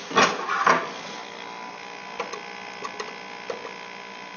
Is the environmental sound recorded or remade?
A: recorded